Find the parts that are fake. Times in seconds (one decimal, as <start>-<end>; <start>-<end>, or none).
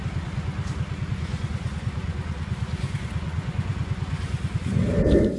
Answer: 1.1-4.8